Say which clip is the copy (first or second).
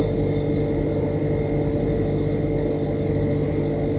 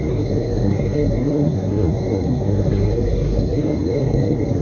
second